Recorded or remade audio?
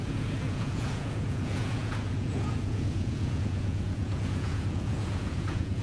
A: remade